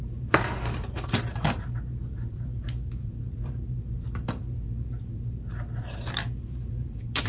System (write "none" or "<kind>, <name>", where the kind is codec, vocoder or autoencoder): vocoder, BigVGAN v2